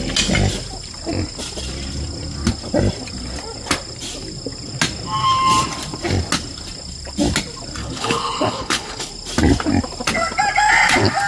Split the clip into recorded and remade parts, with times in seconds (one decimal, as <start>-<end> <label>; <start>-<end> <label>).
0.0-7.8 recorded; 7.8-9.1 remade; 9.1-11.3 recorded